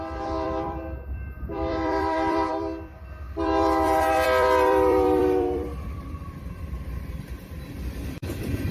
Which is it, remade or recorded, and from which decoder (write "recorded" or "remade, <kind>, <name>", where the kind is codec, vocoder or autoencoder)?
remade, vocoder, BigVGAN v2